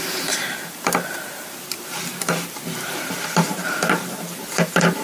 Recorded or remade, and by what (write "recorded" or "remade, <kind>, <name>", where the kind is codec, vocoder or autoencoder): remade, vocoder, BigVGAN v2